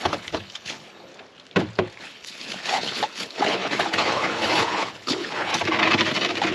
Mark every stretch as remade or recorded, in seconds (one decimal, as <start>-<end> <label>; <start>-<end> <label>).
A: 0.0-1.1 remade; 1.1-2.0 recorded; 2.0-5.5 remade; 5.5-6.5 recorded